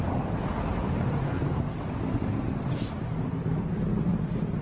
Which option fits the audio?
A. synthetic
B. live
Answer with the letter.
B